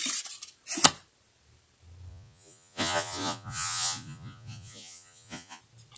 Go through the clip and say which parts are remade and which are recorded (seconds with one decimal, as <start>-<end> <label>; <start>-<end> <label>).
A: 0.0-2.1 recorded; 2.1-5.6 remade; 5.6-6.0 recorded